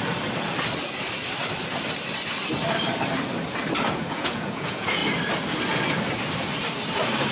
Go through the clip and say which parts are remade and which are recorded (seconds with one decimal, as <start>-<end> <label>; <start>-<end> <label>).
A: 0.0-4.0 recorded; 4.0-5.0 remade; 5.0-7.3 recorded